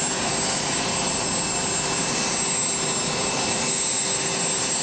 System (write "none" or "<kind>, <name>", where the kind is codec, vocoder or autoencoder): none